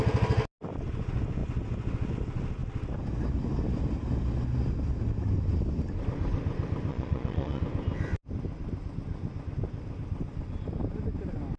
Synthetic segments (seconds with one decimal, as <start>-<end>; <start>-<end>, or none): 6.9-7.6